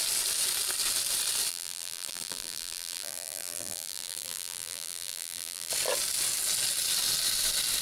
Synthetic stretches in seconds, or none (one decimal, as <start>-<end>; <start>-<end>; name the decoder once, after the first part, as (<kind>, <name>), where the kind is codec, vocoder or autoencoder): 1.5-5.7 (vocoder, BigVGAN v2)